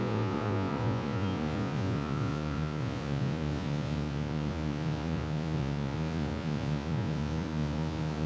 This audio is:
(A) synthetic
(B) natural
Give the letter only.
A